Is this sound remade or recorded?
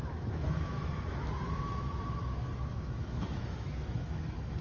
remade